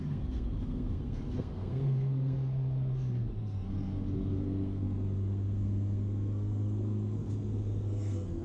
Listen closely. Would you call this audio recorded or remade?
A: remade